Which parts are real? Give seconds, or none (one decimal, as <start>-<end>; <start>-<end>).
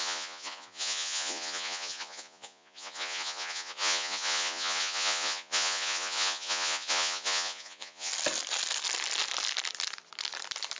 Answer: 8.1-10.8